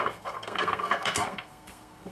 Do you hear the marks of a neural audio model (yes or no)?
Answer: yes